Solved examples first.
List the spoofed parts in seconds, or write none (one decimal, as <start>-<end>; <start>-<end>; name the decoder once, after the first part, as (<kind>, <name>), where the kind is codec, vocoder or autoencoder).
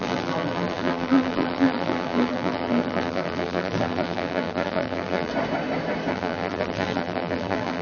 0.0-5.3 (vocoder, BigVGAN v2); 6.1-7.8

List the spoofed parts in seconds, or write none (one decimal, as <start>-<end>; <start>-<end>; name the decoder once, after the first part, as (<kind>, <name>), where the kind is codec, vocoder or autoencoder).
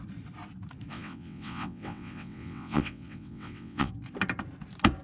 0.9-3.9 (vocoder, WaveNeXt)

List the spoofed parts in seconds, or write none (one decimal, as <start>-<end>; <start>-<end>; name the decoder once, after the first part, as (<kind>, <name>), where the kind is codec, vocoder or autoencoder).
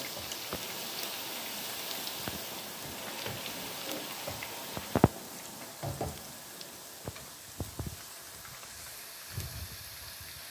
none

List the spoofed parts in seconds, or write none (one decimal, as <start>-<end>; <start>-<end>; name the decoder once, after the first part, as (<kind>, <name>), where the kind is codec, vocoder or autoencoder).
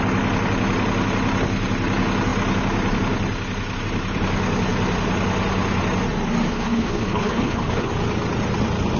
6.5-7.9 (codec, HILCodec)